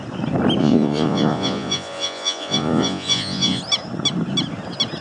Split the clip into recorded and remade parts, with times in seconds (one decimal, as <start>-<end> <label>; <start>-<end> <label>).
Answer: 0.0-0.6 recorded; 0.6-3.6 remade; 3.6-5.0 recorded